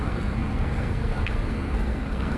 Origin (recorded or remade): remade